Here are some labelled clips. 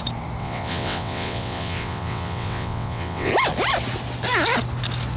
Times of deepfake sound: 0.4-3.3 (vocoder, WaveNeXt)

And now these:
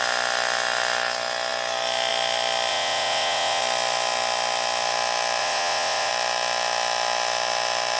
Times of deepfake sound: 2.7-3.6 (vocoder, WaveNeXt); 5.4-6.1

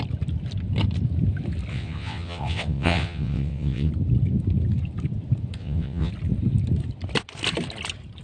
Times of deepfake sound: 1.7-3.9 (vocoder, WaveNeXt); 5.6-6.1

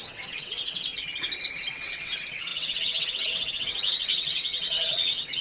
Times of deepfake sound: 0.0-0.9 (vocoder, WaveNeXt); 1.7-5.4

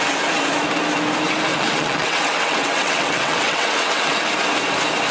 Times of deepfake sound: 1.5-4.3 (vocoder, WaveNeXt)